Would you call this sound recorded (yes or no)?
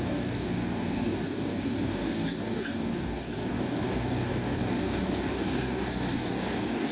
no